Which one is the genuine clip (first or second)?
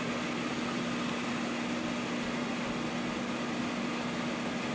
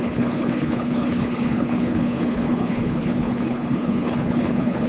first